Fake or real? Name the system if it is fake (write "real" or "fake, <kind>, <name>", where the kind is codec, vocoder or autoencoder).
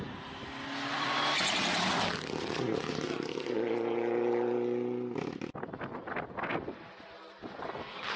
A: real